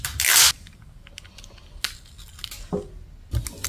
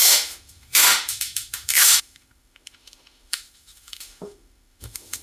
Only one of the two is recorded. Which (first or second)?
first